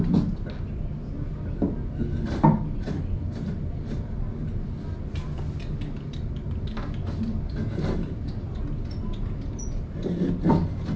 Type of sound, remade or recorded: recorded